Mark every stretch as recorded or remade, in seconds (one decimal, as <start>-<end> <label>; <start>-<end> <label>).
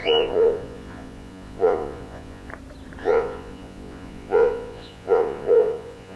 0.0-2.5 remade; 2.5-3.0 recorded; 3.0-6.2 remade